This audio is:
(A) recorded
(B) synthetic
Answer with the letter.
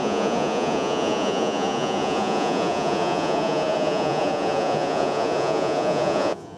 B